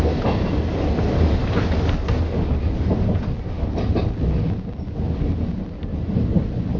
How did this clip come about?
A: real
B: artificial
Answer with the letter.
A